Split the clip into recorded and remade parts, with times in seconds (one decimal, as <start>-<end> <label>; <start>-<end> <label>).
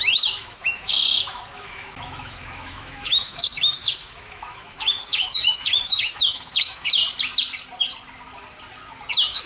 0.0-7.0 remade; 7.0-9.1 recorded; 9.1-9.5 remade